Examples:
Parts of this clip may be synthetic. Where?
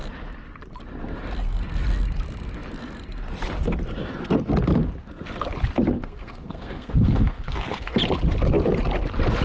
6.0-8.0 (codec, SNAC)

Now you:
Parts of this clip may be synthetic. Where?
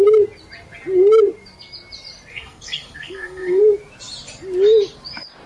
2.3-3.6 (codec, SNAC)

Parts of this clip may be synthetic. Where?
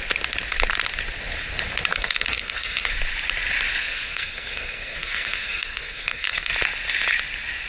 1.9-2.9 (codec, SNAC); 3.8-6.5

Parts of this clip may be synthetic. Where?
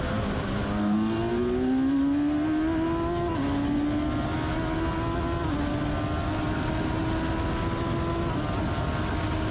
none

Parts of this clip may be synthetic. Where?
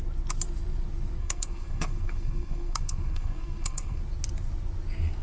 1.2-4.0 (codec, SNAC)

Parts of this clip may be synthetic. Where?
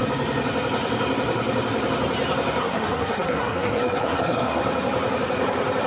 2.6-4.6 (codec, SNAC)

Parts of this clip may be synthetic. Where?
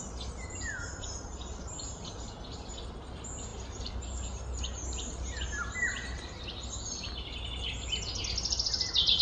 none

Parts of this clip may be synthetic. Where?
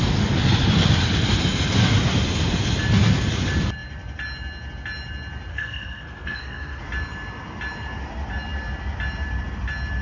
5.5-6.8 (codec, SNAC)